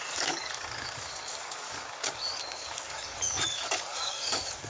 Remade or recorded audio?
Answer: remade